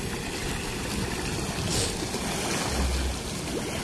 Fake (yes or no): no